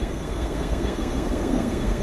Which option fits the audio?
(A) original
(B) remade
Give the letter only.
B